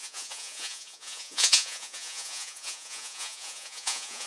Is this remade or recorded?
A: remade